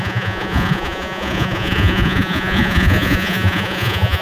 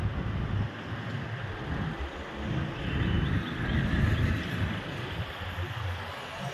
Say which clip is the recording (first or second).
second